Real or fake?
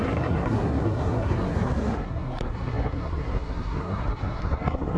fake